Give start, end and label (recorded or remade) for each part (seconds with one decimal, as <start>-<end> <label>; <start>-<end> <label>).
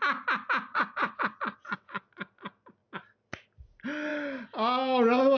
0.0-0.7 recorded; 0.7-2.0 remade; 2.0-5.4 recorded